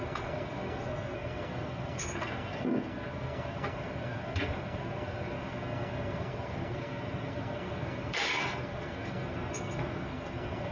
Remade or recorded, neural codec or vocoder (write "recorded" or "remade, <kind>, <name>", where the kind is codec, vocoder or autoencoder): remade, codec, SNAC